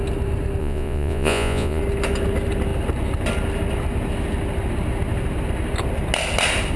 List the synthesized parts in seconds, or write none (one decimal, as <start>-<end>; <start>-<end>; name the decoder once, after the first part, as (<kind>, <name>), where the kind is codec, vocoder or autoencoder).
0.6-1.8 (vocoder, Vocos)